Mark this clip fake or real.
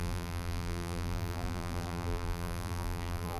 fake